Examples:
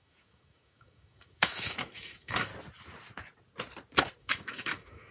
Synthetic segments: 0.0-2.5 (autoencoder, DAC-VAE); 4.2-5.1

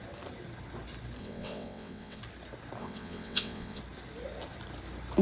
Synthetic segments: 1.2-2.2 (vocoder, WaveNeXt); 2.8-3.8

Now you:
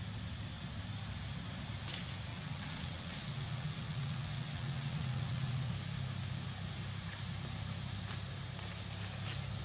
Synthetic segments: 2.3-5.7 (vocoder, WaveNeXt)

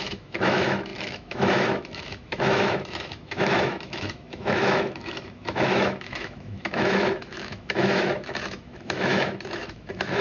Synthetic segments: 0.0-10.2 (autoencoder, DAC-VAE)